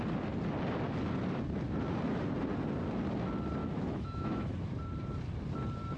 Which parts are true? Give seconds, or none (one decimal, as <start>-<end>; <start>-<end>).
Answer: 0.0-3.6; 4.7-6.0